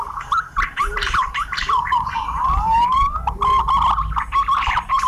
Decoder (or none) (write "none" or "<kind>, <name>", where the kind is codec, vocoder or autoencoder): vocoder, BigVGAN v2